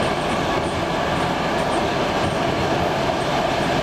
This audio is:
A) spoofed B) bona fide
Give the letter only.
B